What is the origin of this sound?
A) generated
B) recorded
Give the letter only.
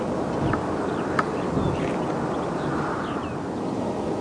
B